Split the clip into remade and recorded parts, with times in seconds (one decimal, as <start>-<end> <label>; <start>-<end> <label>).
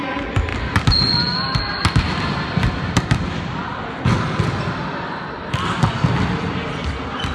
0.0-7.3 recorded